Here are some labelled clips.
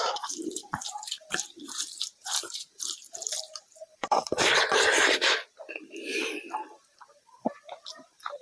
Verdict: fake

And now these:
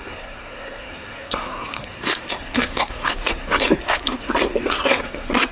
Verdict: fake